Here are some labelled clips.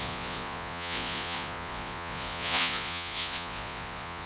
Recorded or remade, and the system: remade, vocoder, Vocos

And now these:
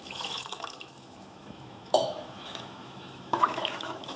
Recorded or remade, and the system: remade, autoencoder, DAC-VAE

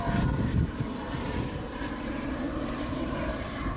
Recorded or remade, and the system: remade, vocoder, BigVGAN v2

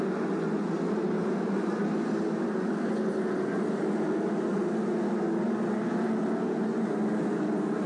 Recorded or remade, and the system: recorded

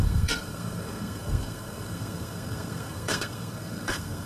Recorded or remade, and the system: remade, codec, SNAC